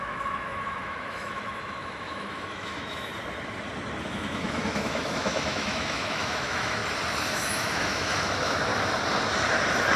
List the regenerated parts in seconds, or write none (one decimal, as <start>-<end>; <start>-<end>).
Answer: 0.0-3.1; 4.0-6.8; 7.3-8.7